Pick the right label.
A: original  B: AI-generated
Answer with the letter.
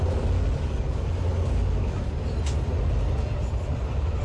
A